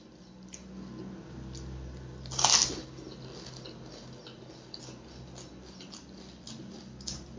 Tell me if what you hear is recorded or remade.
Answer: recorded